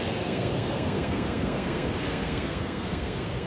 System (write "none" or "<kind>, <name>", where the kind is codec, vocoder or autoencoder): codec, SNAC